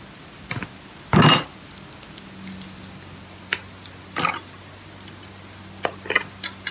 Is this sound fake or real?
real